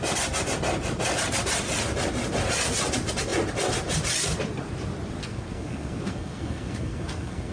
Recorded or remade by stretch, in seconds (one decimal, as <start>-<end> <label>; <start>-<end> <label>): 0.0-5.2 recorded; 5.2-7.5 remade

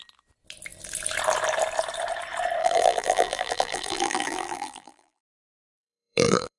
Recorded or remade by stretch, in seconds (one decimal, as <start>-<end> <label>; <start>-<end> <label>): 0.0-2.6 recorded; 2.6-6.6 remade